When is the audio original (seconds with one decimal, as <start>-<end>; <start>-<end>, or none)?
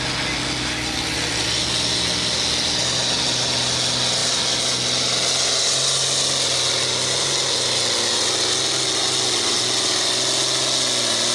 0.0-11.3